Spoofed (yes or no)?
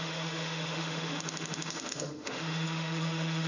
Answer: yes